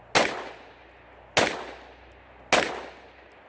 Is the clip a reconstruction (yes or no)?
no